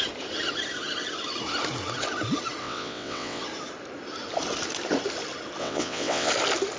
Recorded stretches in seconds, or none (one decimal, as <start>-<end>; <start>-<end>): 0.0-2.6; 3.4-5.6; 6.3-6.8